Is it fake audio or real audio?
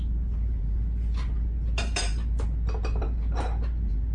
real